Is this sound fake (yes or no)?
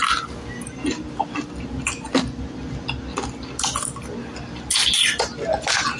no